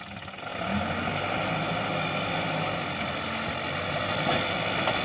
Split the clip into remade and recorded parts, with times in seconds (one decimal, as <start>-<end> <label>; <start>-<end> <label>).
0.0-5.0 recorded